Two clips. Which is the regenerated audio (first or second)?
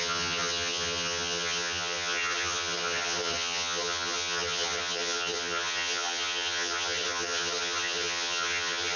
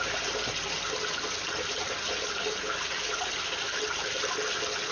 first